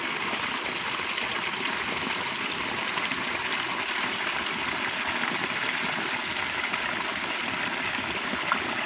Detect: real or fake real